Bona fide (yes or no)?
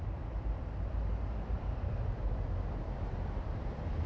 no